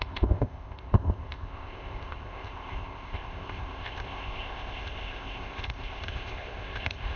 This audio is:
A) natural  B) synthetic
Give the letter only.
B